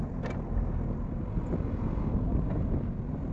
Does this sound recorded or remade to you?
recorded